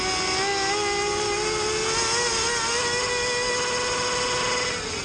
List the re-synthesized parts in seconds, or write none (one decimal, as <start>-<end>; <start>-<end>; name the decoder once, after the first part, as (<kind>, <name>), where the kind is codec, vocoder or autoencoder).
none